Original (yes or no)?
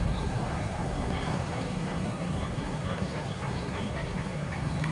no